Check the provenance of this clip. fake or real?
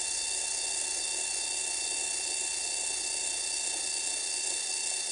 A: real